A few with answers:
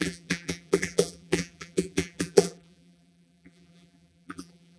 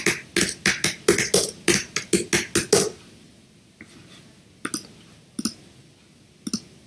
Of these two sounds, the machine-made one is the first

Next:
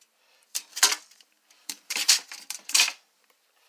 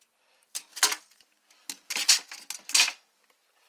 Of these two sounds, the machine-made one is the first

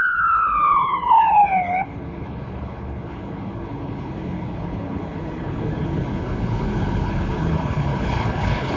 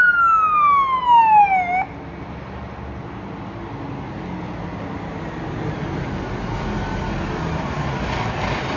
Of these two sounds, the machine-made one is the first